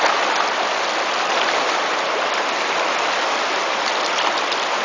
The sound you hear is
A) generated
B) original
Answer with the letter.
B